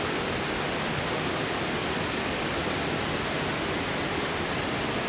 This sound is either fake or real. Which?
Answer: real